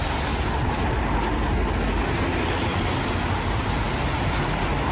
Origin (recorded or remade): recorded